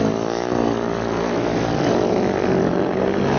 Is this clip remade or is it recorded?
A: recorded